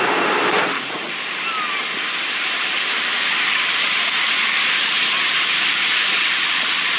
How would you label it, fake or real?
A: real